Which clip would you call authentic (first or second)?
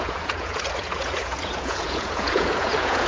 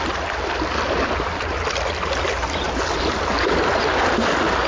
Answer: second